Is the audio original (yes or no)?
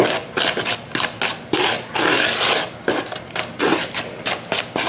yes